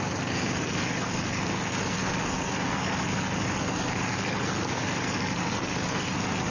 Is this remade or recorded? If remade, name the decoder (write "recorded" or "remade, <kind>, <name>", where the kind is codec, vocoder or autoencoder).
remade, codec, SNAC